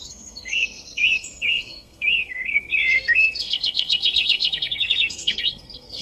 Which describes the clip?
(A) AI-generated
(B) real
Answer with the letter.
A